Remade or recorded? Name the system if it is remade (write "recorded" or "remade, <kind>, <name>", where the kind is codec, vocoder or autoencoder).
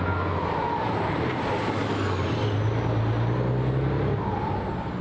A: recorded